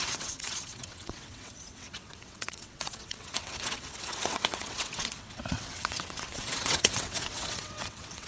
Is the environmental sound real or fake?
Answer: fake